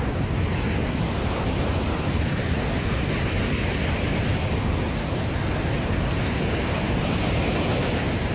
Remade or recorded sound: recorded